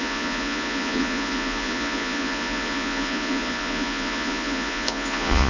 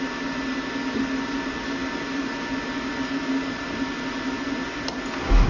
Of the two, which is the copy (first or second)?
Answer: first